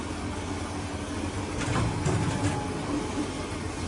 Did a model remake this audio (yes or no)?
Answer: no